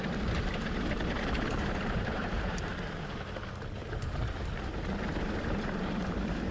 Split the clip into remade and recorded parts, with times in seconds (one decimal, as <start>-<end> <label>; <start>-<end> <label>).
0.0-2.7 remade; 2.7-3.9 recorded; 3.9-6.5 remade

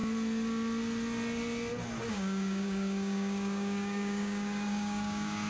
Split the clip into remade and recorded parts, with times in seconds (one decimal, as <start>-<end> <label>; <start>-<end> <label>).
0.0-2.1 recorded; 2.1-5.5 remade

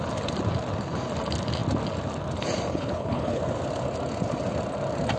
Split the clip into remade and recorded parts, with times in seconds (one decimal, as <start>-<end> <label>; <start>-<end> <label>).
0.0-2.7 recorded; 2.7-3.4 remade; 3.4-5.2 recorded